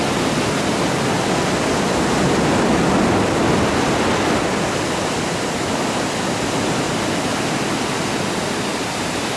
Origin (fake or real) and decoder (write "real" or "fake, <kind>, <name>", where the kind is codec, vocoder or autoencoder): real